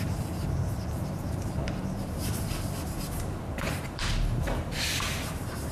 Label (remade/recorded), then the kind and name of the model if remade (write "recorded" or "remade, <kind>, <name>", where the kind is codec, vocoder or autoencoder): remade, vocoder, BigVGAN v2